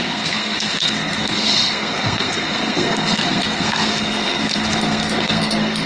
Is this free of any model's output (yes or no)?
no